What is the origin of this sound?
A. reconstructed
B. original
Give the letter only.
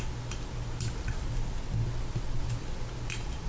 B